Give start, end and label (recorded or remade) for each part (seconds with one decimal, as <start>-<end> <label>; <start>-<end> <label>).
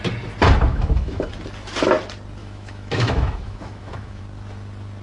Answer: 0.0-0.7 recorded; 0.7-1.3 remade; 1.3-2.4 recorded; 2.4-4.2 remade; 4.2-5.0 recorded